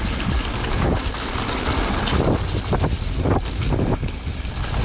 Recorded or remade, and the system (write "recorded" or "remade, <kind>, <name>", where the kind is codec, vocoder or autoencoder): recorded